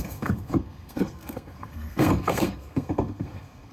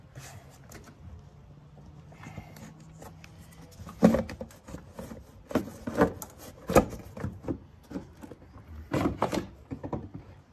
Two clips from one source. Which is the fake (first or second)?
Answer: first